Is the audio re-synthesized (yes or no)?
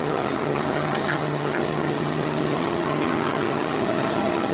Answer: yes